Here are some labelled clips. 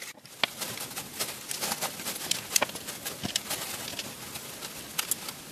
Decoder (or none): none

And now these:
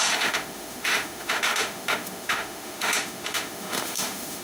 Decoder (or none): autoencoder, DAC-VAE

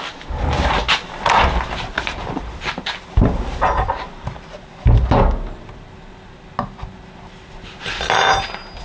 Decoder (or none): none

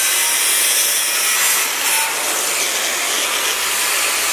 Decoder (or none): none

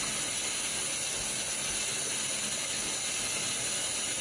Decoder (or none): none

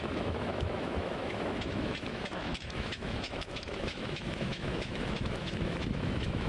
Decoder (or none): autoencoder, DAC-VAE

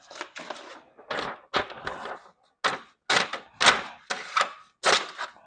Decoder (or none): none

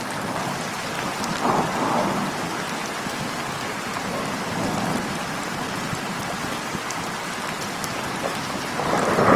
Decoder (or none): none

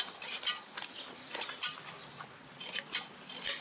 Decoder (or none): none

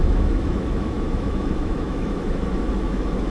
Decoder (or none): autoencoder, DAC-VAE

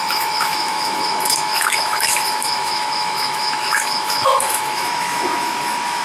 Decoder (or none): autoencoder, DAC-VAE